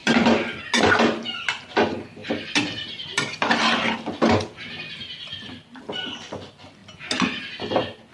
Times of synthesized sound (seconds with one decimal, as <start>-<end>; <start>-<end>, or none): 0.0-0.6; 2.2-4.3